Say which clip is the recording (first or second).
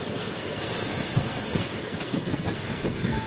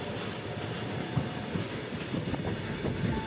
second